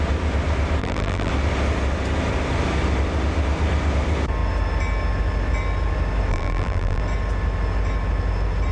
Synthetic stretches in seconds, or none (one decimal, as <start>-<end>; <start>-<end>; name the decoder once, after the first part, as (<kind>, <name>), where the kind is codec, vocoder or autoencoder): 0.8-1.3 (vocoder, BigVGAN v2); 6.3-7.0